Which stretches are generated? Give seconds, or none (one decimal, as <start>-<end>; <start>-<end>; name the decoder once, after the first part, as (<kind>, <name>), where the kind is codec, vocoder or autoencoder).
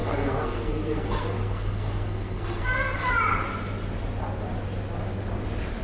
0.0-3.1 (codec, SNAC)